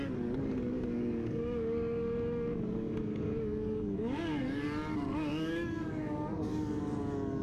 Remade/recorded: remade